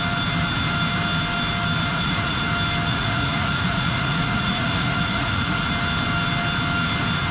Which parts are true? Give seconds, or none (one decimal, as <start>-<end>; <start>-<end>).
0.0-1.9; 2.4-2.9; 5.7-7.3